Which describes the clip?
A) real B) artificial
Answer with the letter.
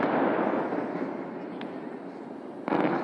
A